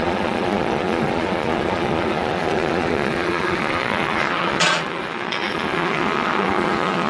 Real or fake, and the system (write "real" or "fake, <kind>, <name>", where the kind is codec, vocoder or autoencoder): fake, vocoder, Vocos